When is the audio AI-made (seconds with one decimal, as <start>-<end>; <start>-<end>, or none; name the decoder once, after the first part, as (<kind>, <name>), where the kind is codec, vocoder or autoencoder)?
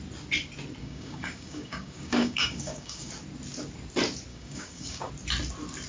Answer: 0.8-3.1 (codec, DAC); 4.3-5.1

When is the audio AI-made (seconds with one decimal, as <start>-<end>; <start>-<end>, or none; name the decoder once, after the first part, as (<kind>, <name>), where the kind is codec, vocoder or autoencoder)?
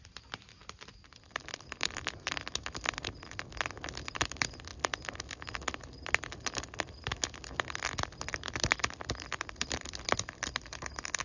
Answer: none